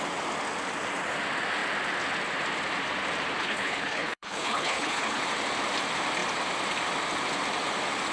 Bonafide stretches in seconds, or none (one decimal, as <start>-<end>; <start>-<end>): 0.0-3.4; 5.2-8.1